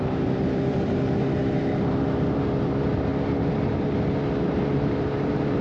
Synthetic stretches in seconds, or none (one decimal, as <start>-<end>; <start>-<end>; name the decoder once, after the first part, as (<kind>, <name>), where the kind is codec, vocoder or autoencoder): 0.0-3.1 (vocoder, BigVGAN v2); 3.7-5.6